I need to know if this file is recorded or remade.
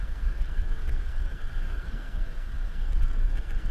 remade